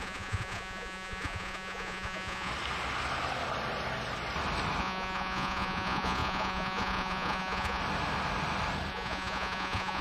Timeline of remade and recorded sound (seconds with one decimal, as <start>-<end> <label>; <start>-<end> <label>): 0.0-2.5 remade; 2.5-4.8 recorded; 4.8-7.8 remade; 7.8-8.9 recorded; 8.9-10.0 remade